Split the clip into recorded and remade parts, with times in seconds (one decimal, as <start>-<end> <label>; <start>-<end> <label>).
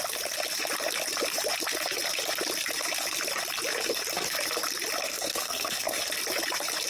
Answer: 0.0-5.0 recorded; 5.0-6.0 remade; 6.0-6.9 recorded